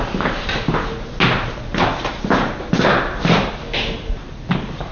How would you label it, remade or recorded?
recorded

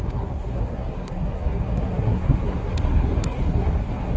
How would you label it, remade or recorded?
remade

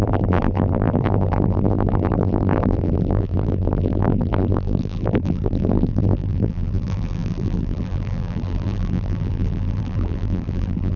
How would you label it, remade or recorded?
remade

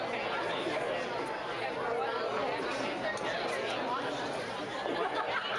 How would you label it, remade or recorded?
recorded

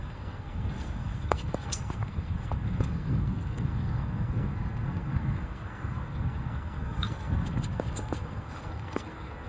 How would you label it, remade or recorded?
remade